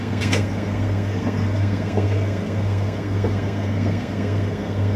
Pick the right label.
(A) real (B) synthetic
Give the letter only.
B